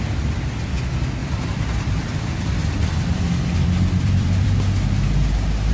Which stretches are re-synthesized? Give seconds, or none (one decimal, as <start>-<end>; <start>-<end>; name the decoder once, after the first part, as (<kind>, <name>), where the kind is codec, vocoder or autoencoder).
1.2-4.6 (vocoder, BigVGAN v2)